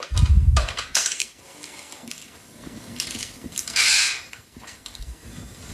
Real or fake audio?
fake